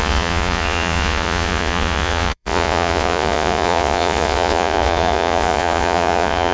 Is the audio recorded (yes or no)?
no